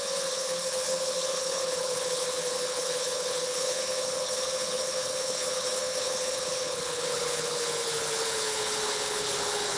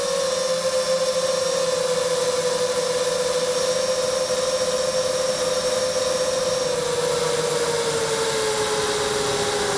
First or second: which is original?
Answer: second